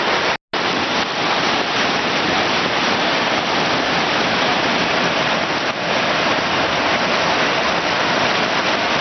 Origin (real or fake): real